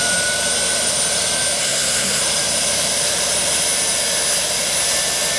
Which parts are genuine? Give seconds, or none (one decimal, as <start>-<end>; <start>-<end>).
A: 0.0-1.6; 2.2-5.4